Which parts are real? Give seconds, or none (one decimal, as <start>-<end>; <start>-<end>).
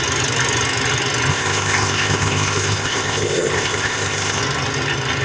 0.0-1.3; 4.4-5.2